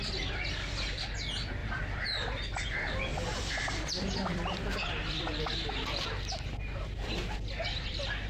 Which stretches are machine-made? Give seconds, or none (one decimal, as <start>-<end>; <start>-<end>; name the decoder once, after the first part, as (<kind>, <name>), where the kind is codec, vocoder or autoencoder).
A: 1.6-5.5 (vocoder, BigVGAN v2)